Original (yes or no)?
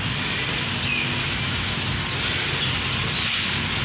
yes